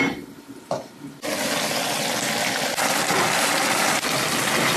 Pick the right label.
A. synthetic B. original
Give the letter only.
B